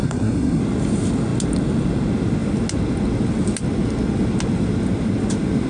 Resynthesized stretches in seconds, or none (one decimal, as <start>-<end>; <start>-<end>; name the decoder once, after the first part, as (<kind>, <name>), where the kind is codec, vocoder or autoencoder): 0.0-0.6 (codec, SNAC)

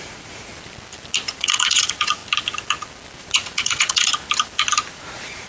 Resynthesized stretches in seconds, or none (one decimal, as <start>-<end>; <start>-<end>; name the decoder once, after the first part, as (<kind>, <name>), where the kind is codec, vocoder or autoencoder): 0.0-0.5 (vocoder, Vocos); 1.3-2.2; 3.2-4.1; 4.9-5.5

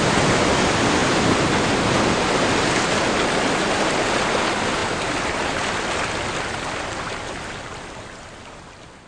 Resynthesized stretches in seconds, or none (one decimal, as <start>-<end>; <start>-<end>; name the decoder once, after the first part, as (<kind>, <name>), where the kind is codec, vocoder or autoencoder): 1.0-1.5 (vocoder, BigVGAN v2); 4.8-7.6

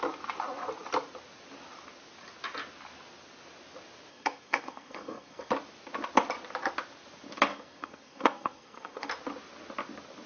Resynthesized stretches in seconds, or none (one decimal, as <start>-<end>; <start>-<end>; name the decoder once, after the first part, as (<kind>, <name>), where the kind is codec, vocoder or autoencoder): 4.1-5.5 (codec, SNAC); 7.5-9.1

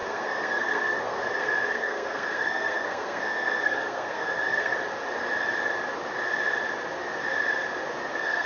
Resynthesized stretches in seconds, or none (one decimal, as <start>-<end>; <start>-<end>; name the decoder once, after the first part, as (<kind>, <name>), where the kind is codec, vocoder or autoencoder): 0.0-4.8 (codec, SNAC); 8.1-8.5